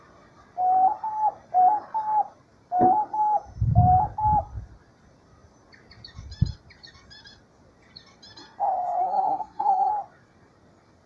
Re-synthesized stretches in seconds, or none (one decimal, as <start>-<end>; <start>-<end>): 9.0-9.9

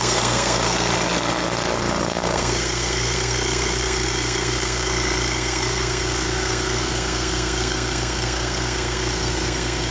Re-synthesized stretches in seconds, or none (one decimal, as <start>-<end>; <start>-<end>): 0.0-0.9; 2.0-9.9

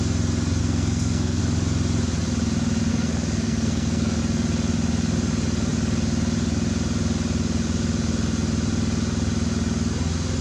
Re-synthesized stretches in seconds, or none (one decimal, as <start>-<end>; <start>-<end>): 0.6-1.4; 2.9-4.2

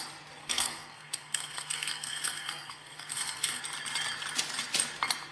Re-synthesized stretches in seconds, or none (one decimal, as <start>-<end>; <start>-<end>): 0.4-3.6